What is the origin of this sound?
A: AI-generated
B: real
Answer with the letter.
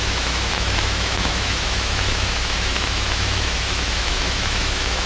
A